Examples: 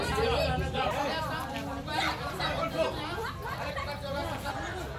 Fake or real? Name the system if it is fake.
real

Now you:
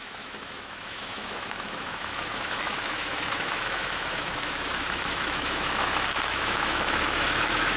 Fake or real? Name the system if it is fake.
fake, autoencoder, DAC-VAE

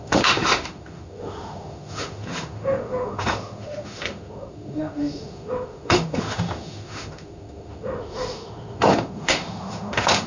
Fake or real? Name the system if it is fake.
fake, autoencoder, DAC-VAE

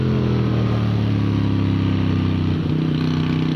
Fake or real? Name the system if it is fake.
real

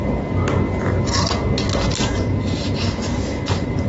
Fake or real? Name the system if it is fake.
real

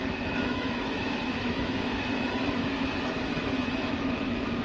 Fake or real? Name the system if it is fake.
fake, autoencoder, DAC-VAE